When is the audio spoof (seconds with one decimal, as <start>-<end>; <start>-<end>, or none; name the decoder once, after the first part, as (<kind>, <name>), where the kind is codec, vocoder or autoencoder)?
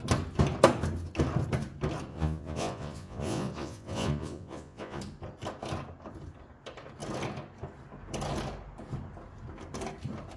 2.1-5.0 (vocoder, Vocos)